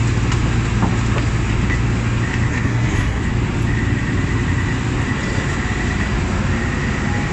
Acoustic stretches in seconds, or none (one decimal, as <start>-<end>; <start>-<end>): 0.0-2.5; 3.2-7.3

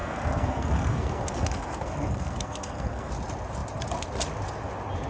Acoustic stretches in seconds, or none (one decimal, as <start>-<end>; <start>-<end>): 3.1-5.1